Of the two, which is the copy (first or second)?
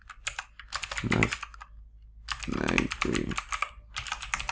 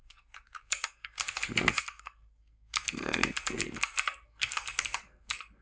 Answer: second